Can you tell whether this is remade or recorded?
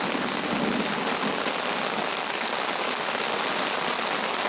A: recorded